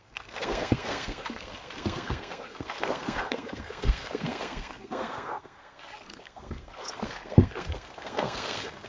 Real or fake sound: fake